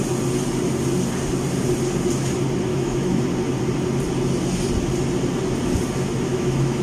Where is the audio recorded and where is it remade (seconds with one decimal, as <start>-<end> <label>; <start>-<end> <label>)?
0.0-2.7 recorded; 2.7-3.2 remade; 3.2-6.3 recorded; 6.3-6.8 remade